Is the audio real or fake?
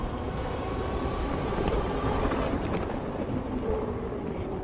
fake